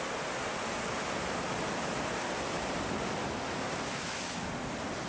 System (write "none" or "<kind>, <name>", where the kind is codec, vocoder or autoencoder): none